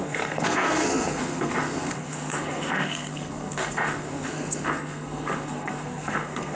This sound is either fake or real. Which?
fake